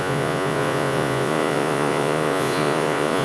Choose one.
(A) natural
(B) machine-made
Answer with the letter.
B